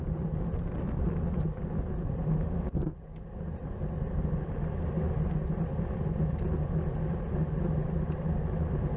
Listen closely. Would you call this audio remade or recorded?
recorded